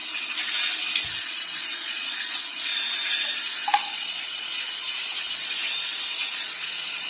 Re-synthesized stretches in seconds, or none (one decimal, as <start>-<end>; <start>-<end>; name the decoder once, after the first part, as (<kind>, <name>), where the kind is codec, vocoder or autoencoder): 1.2-2.7 (vocoder, Vocos); 3.9-7.1